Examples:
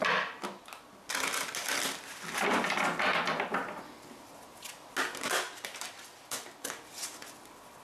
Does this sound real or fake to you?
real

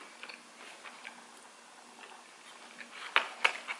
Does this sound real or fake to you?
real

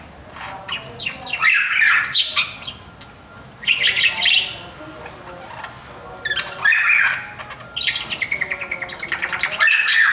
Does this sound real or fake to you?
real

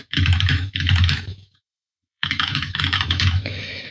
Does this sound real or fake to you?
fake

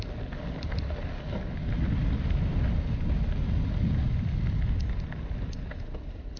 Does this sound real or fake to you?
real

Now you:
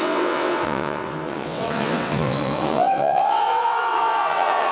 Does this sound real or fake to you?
fake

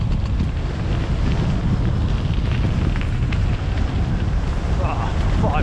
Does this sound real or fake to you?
real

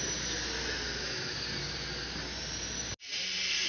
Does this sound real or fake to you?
real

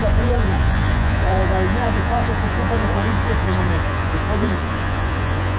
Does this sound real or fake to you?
fake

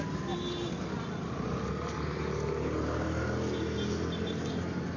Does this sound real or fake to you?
real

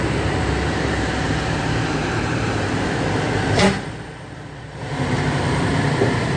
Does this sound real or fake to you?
fake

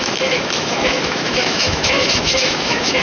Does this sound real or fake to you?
fake